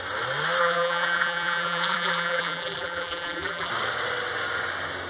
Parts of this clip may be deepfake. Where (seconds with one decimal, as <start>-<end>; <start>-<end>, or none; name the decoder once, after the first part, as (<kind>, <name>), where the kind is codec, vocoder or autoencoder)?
0.6-3.7 (vocoder, BigVGAN v2)